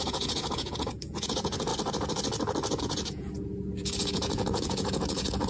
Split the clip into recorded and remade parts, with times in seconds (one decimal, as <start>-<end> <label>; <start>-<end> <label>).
0.0-1.7 remade; 1.7-2.8 recorded; 2.8-5.5 remade